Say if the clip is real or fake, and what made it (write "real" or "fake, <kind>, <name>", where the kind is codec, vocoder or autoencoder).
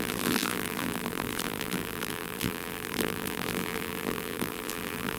fake, vocoder, BigVGAN v2